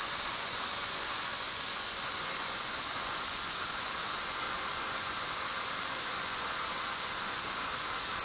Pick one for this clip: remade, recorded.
remade